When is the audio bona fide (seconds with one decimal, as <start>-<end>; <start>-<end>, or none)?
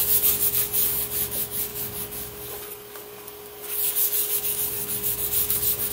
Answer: none